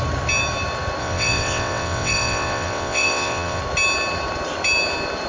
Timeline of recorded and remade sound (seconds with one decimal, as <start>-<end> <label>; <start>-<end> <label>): 0.0-1.0 recorded; 1.0-3.6 remade; 3.6-5.3 recorded